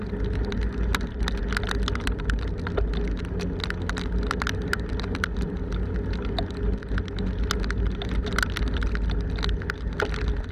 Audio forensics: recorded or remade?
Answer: recorded